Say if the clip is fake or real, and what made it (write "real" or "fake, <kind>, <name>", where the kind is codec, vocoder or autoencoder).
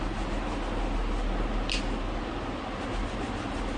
real